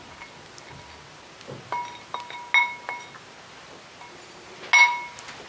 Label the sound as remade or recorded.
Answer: recorded